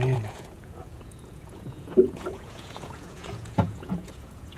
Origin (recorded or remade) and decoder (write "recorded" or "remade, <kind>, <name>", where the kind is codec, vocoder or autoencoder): remade, vocoder, Vocos